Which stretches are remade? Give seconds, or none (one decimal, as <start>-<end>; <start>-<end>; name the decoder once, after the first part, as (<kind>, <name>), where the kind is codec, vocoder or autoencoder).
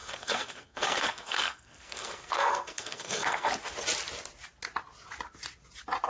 0.0-3.5 (codec, SNAC)